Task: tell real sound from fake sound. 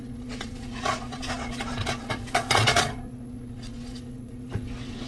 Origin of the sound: fake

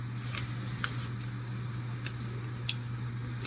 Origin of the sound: real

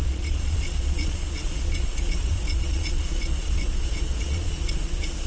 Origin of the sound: fake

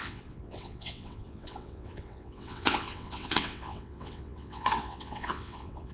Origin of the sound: fake